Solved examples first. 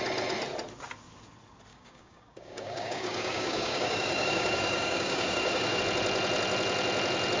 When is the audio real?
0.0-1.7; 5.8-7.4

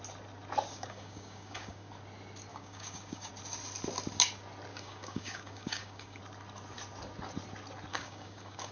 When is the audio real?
0.0-0.7; 1.9-2.5; 3.3-4.7; 6.2-7.9

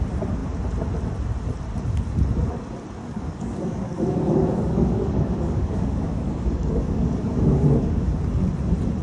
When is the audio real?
0.0-3.0; 8.2-9.0

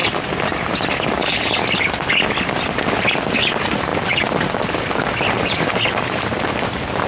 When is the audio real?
0.0-7.1

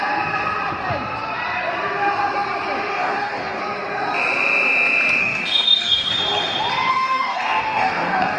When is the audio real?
0.0-2.9; 3.6-5.2; 6.1-6.9